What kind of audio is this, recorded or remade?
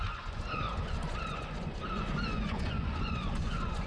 remade